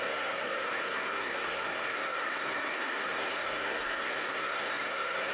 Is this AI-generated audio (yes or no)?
yes